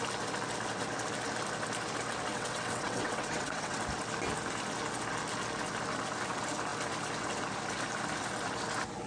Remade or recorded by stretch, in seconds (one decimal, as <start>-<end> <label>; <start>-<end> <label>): 0.0-2.3 recorded; 2.3-3.8 remade; 3.8-9.1 recorded